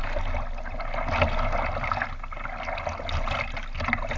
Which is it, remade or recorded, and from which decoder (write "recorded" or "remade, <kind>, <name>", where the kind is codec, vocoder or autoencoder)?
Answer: recorded